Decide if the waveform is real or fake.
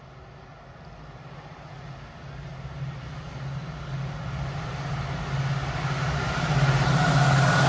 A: real